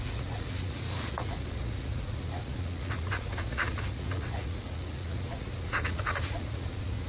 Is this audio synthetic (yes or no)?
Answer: yes